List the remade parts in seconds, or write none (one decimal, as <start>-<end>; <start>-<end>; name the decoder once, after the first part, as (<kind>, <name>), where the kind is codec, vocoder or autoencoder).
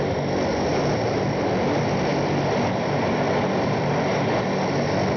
0.7-1.2 (vocoder, BigVGAN v2); 2.1-4.4